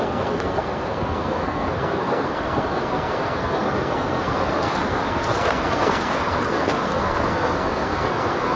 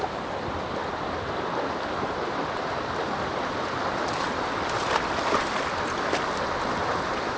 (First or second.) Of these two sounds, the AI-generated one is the first